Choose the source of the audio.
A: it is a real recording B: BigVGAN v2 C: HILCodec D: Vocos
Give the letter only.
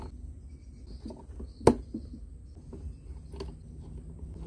A